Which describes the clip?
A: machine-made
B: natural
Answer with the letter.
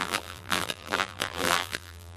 A